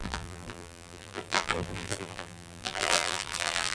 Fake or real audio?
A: fake